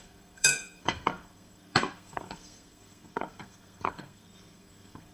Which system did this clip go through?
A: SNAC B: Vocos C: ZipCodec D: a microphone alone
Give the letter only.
A